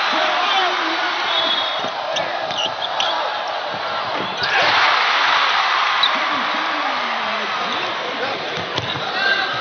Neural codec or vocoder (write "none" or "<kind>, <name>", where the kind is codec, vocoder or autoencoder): vocoder, BigVGAN v2